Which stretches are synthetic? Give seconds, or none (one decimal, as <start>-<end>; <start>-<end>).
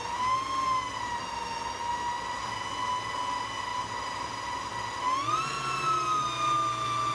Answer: none